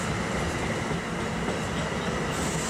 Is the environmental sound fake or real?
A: real